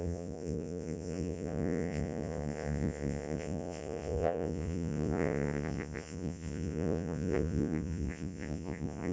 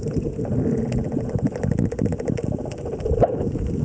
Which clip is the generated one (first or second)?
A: first